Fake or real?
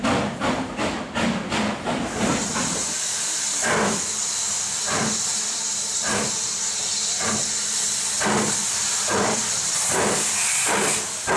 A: real